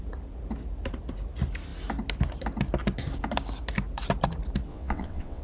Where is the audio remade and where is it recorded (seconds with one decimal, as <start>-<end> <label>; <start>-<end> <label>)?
0.0-4.7 recorded; 4.7-5.4 remade